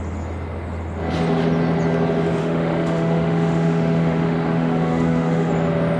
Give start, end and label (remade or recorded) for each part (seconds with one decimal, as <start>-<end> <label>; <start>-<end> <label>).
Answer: 0.0-2.4 recorded; 2.4-5.5 remade; 5.5-6.0 recorded